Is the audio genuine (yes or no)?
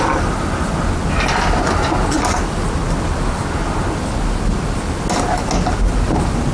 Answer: yes